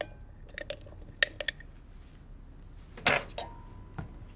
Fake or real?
real